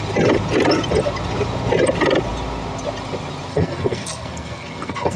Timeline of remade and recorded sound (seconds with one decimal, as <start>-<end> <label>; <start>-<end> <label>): 0.0-3.5 recorded; 3.5-5.2 remade